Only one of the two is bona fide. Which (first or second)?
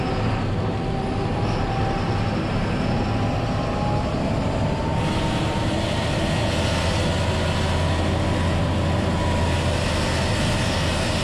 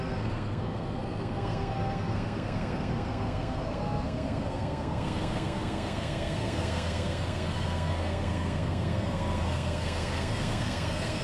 first